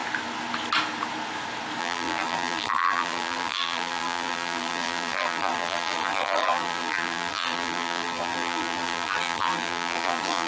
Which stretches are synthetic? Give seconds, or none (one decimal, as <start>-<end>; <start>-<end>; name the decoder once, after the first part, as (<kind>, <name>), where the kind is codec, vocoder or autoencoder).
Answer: 1.8-10.5 (vocoder, BigVGAN v2)